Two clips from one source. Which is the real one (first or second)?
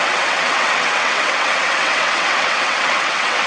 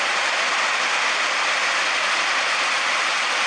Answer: second